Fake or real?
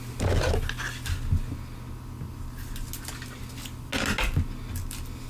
real